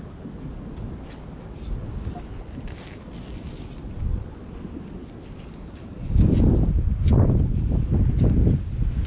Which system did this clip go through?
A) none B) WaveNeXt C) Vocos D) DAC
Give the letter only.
A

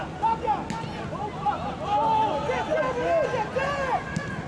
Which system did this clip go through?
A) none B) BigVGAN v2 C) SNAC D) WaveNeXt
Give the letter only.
A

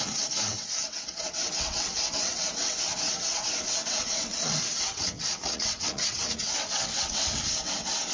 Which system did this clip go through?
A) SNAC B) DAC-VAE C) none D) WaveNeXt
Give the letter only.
D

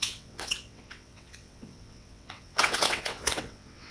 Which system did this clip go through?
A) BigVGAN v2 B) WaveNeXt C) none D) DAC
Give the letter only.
B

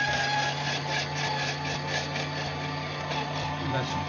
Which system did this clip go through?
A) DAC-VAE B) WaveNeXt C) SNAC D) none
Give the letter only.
D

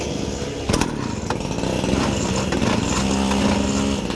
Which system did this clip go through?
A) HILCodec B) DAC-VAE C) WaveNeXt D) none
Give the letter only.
D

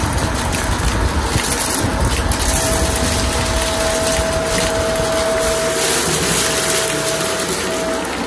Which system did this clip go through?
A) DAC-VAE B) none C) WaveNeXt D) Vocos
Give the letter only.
B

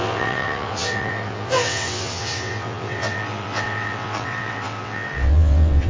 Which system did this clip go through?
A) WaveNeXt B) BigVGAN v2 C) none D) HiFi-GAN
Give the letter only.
A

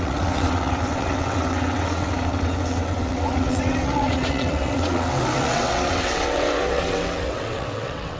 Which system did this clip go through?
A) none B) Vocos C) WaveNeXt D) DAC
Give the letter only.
C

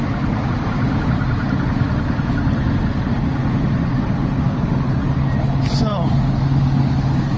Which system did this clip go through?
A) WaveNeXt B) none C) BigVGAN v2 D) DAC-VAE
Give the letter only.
B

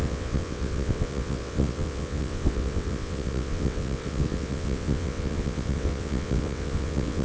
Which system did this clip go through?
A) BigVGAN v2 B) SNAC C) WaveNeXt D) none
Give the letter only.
C